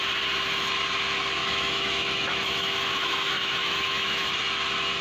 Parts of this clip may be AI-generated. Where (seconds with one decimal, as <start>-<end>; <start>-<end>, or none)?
1.4-4.4

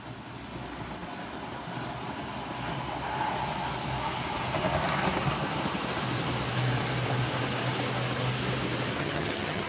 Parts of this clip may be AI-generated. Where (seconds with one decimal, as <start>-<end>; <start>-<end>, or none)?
9.0-9.7